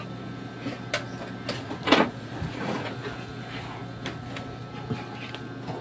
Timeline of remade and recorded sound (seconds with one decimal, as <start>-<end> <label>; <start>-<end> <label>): 0.0-1.6 recorded; 1.6-2.9 remade; 2.9-5.8 recorded